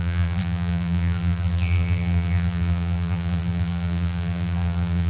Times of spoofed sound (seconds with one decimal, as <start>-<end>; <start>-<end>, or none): 0.0-5.1